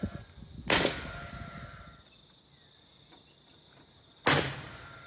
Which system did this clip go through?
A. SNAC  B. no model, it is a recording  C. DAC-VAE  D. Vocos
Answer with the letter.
B